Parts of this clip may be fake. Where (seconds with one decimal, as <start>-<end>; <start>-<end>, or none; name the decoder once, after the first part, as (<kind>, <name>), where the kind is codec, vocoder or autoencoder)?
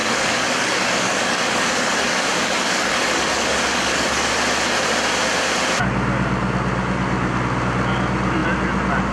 0.0-4.3 (codec, DAC)